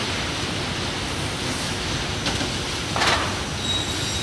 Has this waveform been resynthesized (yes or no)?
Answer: no